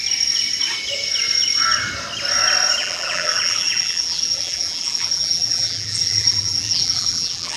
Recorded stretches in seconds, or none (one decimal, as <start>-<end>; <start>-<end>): 0.0-2.8